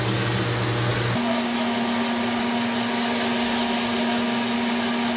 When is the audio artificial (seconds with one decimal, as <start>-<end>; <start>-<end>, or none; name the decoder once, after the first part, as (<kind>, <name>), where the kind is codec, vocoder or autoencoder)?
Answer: none